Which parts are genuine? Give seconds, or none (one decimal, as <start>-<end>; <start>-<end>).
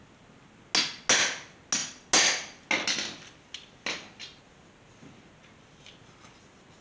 0.0-6.8